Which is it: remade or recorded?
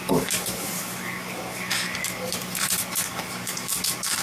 remade